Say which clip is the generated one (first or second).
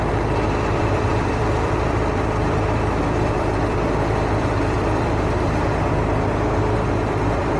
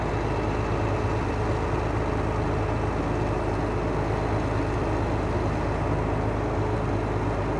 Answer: first